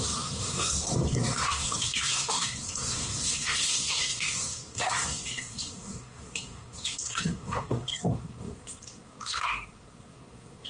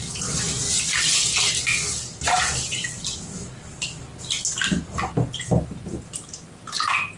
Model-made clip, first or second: first